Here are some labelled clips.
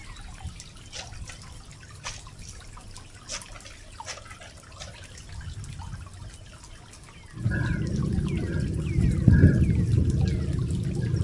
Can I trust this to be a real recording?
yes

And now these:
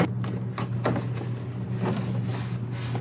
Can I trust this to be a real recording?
yes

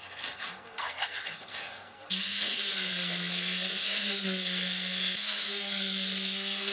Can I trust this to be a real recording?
no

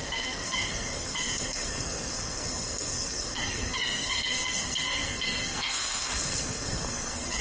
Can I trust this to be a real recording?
no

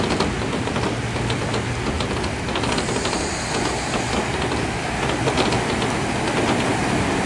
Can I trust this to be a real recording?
yes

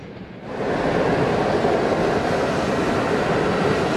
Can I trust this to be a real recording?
yes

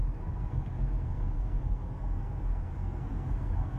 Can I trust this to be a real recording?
no